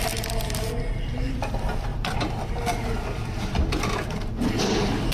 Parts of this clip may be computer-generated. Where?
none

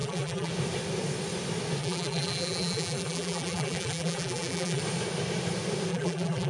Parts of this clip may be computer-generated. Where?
0.0-0.5; 1.8-4.8; 5.9-6.5

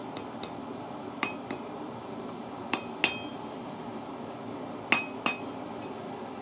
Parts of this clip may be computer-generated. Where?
0.6-2.9; 3.3-4.4

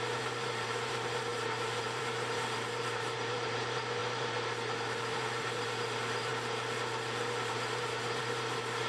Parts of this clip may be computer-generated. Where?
0.0-6.3; 7.5-8.9

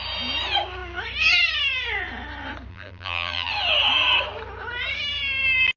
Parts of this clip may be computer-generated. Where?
2.7-3.5